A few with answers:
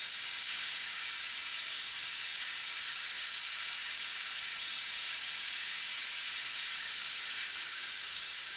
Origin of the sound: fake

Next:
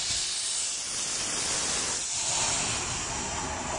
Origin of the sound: real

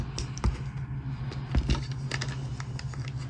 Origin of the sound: real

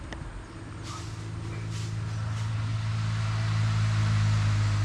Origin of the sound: real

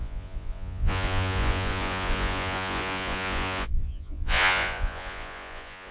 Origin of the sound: fake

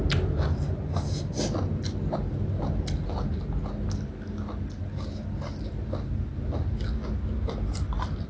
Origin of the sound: real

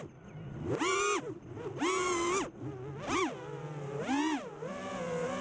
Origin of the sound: real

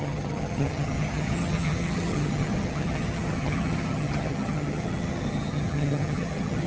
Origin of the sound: fake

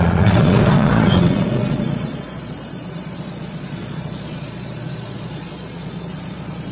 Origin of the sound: fake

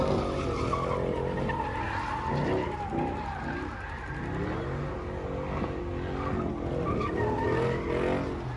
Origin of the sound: real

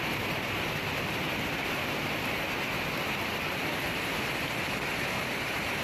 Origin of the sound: real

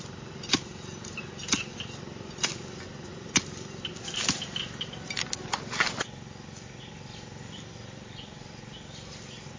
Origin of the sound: real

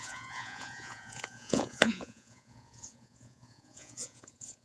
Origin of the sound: fake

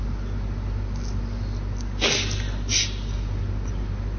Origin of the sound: real